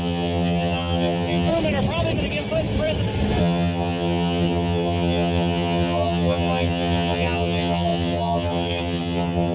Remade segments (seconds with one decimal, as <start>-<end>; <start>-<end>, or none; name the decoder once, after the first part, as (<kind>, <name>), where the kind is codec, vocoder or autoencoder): 0.0-1.5 (vocoder, HiFi-GAN); 3.4-9.5